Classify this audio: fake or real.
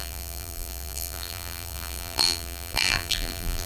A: fake